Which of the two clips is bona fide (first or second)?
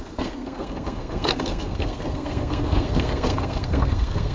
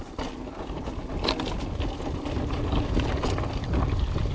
second